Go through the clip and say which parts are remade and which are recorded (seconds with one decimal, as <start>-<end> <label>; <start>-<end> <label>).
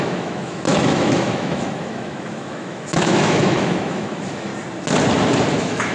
0.0-4.5 remade; 4.5-5.5 recorded; 5.5-5.9 remade